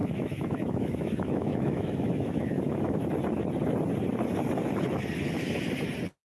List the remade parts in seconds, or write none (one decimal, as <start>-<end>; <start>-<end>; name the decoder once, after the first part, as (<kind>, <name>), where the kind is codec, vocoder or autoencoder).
0.0-3.0 (autoencoder, DAC-VAE)